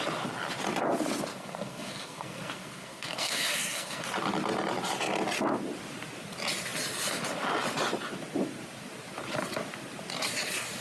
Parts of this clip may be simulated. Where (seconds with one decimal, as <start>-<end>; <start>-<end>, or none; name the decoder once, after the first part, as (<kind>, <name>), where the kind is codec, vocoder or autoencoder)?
1.3-4.0 (codec, SNAC)